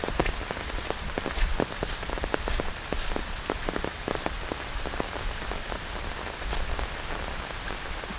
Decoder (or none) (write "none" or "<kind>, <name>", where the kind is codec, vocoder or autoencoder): none